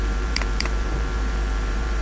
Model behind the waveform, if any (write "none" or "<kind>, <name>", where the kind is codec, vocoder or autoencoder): vocoder, BigVGAN v2